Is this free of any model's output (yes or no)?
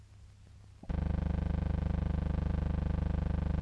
yes